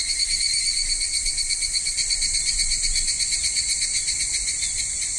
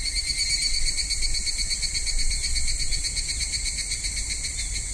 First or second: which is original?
second